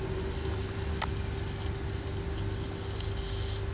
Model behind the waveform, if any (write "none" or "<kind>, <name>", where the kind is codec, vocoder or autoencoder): none